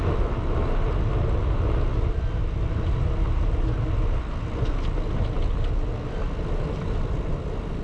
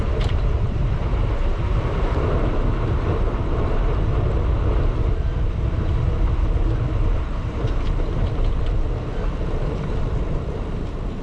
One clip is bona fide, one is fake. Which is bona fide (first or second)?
first